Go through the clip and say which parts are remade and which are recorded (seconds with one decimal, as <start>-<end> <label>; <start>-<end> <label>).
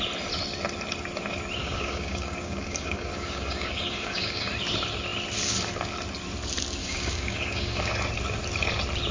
0.0-1.6 recorded; 1.6-4.5 remade; 4.5-6.8 recorded; 6.8-7.9 remade; 7.9-9.1 recorded